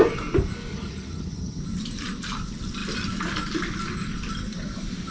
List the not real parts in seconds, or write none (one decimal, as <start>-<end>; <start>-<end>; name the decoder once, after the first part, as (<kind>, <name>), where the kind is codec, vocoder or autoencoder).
0.7-1.6 (vocoder, HiFi-GAN)